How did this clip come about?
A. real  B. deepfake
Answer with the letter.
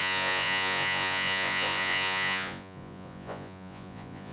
B